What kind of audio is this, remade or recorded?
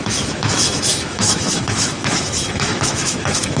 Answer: remade